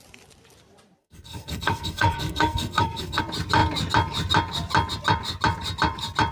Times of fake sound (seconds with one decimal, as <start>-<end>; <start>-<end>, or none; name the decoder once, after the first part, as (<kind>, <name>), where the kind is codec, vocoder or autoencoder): 1.0-3.2 (codec, SNAC)